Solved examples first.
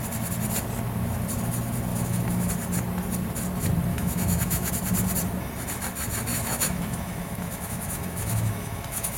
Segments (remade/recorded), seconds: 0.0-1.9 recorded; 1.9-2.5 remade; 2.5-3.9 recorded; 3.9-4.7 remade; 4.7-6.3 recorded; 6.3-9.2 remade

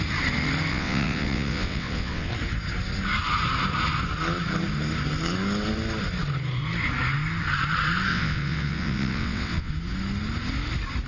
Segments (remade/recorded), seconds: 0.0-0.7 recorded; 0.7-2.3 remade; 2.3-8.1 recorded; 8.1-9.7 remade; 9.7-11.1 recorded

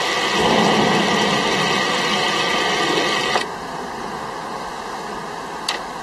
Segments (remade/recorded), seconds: 0.0-6.0 recorded

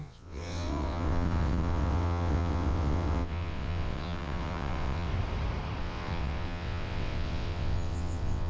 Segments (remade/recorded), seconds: 0.0-5.1 remade; 5.1-5.8 recorded; 5.8-8.5 remade

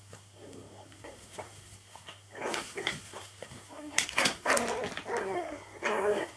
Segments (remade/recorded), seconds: 0.0-4.5 remade; 4.5-5.2 recorded; 5.2-6.4 remade

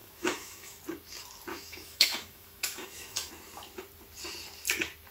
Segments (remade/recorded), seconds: 0.0-0.8 remade; 0.8-1.5 recorded; 1.5-3.3 remade; 3.3-5.1 recorded

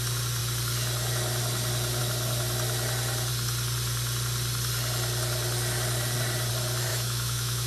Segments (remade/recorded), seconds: 0.0-6.9 recorded; 6.9-7.7 remade

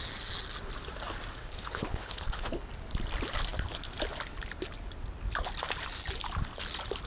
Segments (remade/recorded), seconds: 0.0-1.4 recorded; 1.4-2.7 remade; 2.7-7.1 recorded